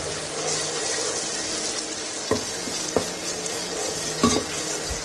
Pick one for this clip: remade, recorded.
recorded